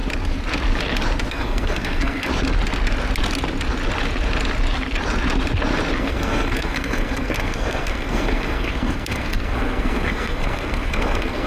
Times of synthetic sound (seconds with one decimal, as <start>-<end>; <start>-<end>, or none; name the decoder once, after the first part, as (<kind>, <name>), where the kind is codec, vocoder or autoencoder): 1.3-2.3 (codec, SNAC); 6.0-11.5